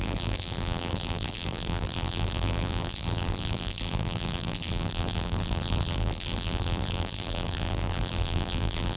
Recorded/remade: remade